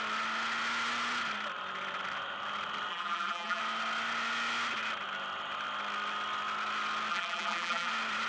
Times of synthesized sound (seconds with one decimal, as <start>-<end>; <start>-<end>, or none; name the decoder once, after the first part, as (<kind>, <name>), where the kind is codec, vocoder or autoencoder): 2.9-3.6 (vocoder, BigVGAN v2); 7.1-7.9